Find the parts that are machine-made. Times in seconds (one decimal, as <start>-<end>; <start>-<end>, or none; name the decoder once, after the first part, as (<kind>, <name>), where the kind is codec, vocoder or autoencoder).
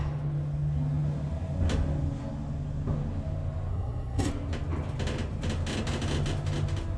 3.7-4.3 (codec, SNAC)